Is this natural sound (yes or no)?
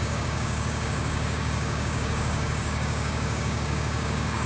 no